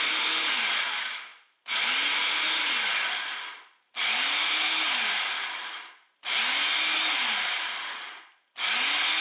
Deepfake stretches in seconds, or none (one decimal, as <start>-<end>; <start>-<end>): none